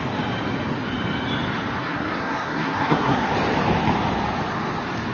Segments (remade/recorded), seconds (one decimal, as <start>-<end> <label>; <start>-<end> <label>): 0.0-1.8 recorded; 1.8-3.3 remade; 3.3-5.1 recorded